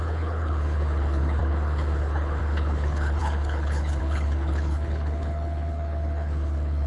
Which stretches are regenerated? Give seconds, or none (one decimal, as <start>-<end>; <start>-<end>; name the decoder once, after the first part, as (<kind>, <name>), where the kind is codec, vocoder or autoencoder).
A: 0.0-6.9 (codec, HILCodec)